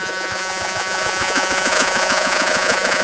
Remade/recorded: remade